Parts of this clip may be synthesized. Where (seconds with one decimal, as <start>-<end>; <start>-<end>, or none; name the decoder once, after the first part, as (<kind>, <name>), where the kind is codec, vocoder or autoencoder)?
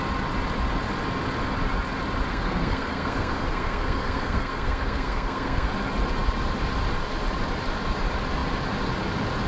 2.3-5.7 (codec, SNAC)